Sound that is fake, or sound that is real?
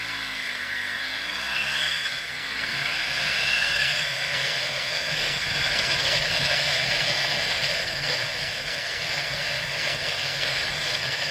fake